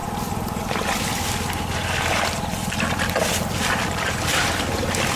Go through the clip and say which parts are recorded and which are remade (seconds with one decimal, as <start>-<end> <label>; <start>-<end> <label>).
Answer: 0.0-1.0 remade; 1.0-5.2 recorded